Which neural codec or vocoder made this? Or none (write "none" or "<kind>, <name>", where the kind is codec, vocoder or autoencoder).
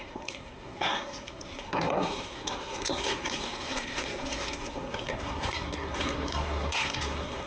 codec, SNAC